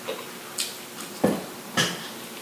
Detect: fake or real real